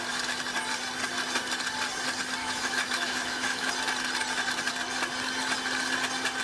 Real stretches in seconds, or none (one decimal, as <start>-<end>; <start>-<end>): 0.0-2.4; 3.7-6.4